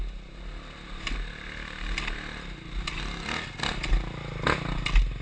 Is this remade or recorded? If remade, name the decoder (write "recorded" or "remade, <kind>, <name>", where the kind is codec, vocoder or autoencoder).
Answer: recorded